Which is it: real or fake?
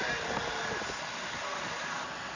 real